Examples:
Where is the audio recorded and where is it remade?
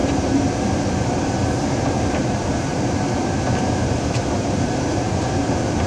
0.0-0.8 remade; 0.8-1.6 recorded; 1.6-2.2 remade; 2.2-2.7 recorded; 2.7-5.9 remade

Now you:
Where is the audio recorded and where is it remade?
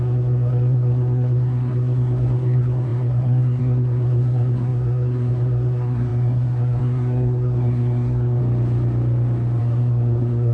0.0-8.4 remade; 8.4-9.6 recorded; 9.6-10.5 remade